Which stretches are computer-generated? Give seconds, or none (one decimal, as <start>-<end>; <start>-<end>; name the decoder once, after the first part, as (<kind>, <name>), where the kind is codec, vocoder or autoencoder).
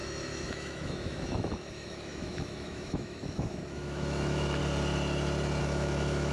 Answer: 0.0-4.6 (autoencoder, DAC-VAE); 5.6-6.3